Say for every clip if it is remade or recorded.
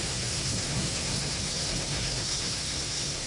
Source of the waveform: remade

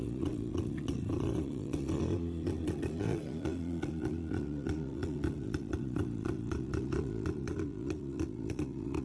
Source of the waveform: remade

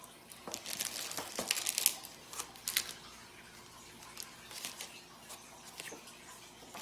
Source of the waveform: recorded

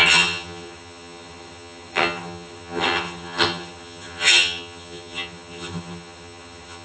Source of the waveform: remade